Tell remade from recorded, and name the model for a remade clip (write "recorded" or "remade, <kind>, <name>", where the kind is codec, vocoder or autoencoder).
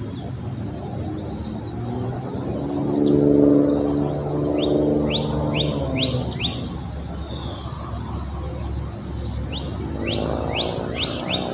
recorded